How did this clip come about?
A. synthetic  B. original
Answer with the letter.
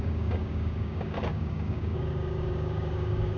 A